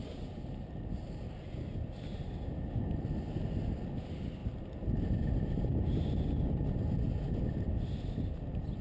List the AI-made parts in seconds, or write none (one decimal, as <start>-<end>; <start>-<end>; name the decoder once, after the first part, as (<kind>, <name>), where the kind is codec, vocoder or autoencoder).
none